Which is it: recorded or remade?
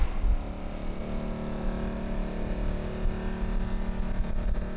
recorded